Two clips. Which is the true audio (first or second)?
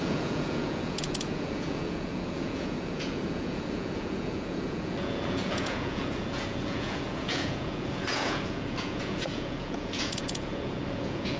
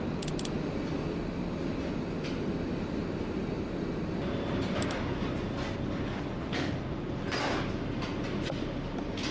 second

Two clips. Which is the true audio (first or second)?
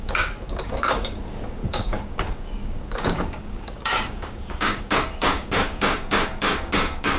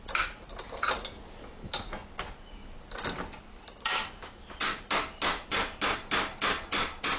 second